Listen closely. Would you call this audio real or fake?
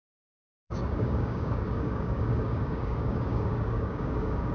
fake